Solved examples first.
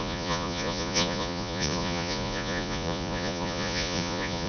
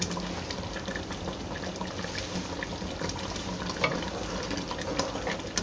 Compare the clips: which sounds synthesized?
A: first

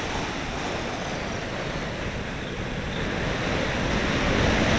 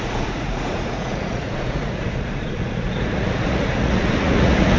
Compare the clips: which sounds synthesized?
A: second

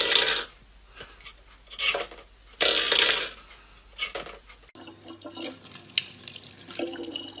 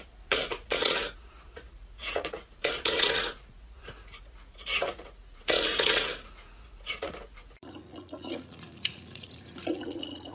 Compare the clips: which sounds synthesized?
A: second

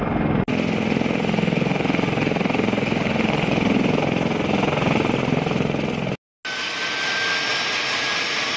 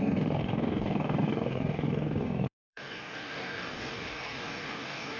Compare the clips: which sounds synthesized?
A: second